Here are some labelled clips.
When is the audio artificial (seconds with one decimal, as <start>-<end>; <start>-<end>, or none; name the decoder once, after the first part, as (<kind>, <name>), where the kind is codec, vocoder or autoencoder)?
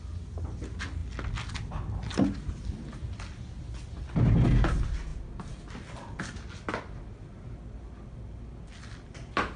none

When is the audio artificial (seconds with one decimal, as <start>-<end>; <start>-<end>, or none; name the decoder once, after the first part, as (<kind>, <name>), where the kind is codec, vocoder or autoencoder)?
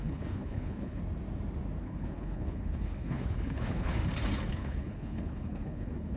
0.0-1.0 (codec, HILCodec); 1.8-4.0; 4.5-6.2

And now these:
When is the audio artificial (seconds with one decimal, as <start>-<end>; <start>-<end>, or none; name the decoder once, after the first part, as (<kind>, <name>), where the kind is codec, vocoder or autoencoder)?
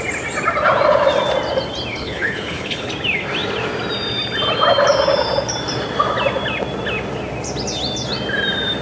1.9-2.9 (codec, HILCodec)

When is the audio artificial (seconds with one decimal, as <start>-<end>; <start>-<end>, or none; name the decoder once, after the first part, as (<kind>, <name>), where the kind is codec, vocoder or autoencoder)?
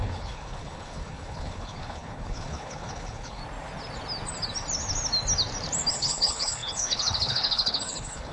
0.0-3.4 (codec, HILCodec); 5.9-8.3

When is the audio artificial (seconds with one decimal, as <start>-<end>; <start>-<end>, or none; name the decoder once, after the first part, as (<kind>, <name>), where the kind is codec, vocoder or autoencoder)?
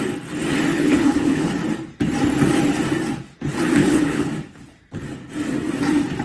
0.7-1.5 (codec, HILCodec); 3.8-4.3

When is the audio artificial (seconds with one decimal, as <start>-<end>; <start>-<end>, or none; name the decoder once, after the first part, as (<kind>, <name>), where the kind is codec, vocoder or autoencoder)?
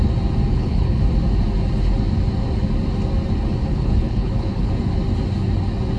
0.5-1.0 (codec, HILCodec); 3.6-4.7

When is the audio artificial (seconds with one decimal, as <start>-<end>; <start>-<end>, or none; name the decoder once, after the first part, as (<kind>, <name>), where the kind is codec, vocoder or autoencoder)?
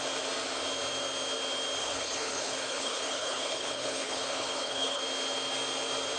1.8-5.0 (codec, HILCodec)